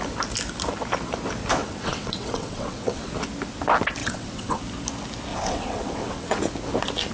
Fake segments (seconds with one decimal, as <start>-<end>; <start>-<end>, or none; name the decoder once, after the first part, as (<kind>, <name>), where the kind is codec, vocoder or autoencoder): 1.6-3.1 (vocoder, WaveNeXt); 4.0-4.6; 5.3-6.4